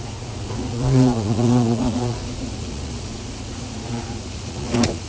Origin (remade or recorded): remade